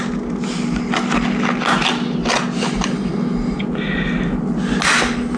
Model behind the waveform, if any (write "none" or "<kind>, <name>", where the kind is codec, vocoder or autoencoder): none